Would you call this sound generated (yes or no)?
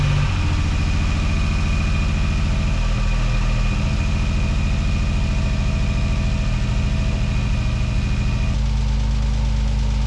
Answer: no